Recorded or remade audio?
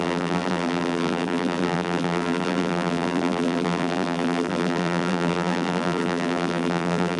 remade